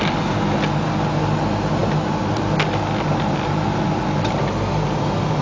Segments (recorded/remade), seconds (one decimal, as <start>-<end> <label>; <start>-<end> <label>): 0.0-5.4 recorded